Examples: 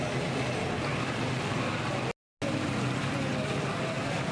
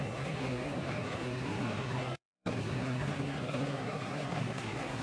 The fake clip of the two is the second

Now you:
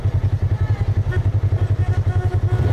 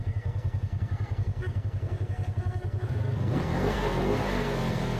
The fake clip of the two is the second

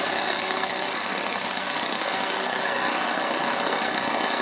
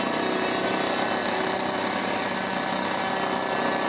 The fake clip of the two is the first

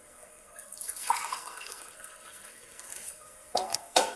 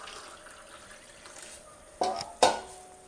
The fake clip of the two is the first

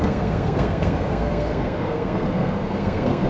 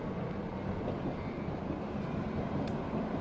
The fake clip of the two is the first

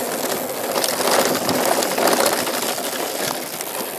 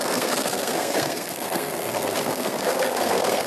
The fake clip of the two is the second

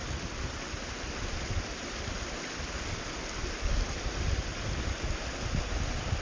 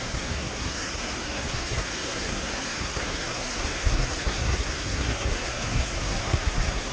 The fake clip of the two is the second